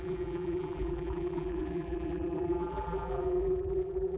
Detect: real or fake fake